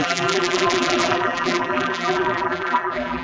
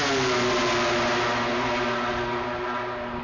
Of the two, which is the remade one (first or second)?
first